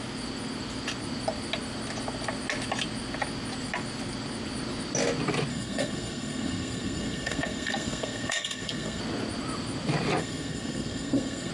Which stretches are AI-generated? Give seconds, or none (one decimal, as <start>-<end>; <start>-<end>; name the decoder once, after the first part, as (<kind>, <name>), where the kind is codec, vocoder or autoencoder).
5.5-9.0 (codec, SNAC); 10.2-11.5